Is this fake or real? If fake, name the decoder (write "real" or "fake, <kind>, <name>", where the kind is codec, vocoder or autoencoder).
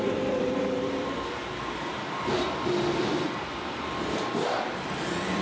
fake, vocoder, BigVGAN v2